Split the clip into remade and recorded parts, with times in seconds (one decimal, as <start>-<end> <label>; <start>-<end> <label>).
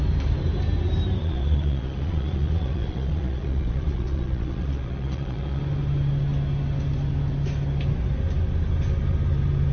0.0-1.2 recorded; 1.2-5.6 remade; 5.6-9.7 recorded